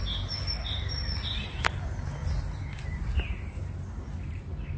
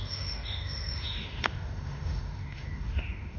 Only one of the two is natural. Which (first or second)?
first